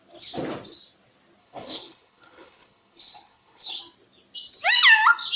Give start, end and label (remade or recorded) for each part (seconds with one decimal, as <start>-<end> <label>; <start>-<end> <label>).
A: 0.0-1.4 recorded; 1.4-3.8 remade; 3.8-5.4 recorded